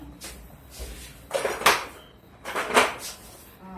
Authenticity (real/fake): real